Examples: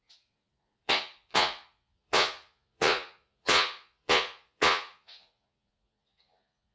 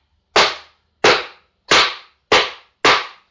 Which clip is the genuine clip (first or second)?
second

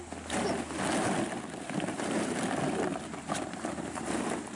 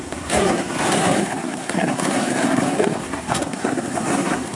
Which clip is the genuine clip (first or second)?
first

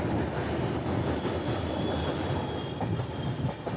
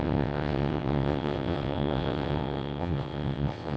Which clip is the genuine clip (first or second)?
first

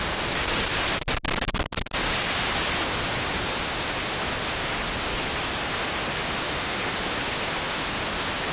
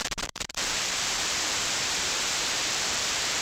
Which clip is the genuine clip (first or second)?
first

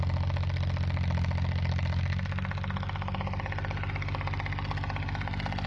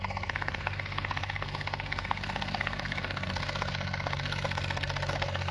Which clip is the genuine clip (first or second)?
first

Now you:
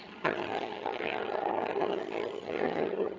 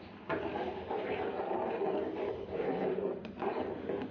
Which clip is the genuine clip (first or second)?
second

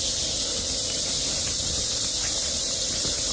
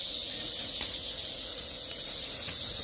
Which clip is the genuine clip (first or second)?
first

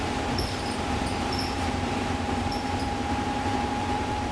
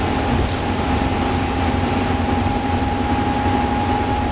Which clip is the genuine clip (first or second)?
second